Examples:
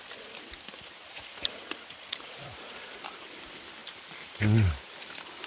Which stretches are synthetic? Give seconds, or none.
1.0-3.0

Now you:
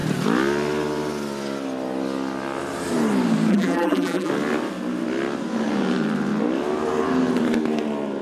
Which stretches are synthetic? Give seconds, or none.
3.5-4.3

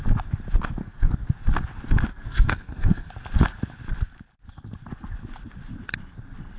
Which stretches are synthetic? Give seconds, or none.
0.8-1.3; 2.1-3.1